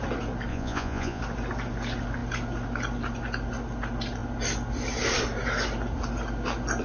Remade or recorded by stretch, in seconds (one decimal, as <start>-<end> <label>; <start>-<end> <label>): 0.0-0.5 recorded; 0.5-1.2 remade; 1.2-6.8 recorded